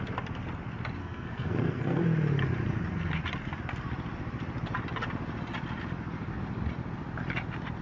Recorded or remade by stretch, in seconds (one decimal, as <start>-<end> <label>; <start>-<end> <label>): 0.0-1.0 recorded; 1.0-2.0 remade; 2.0-7.8 recorded